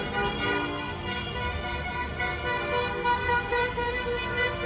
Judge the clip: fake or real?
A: real